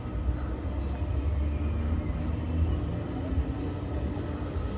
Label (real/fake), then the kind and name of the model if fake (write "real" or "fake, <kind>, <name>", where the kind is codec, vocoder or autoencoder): real